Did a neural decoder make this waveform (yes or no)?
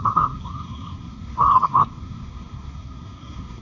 yes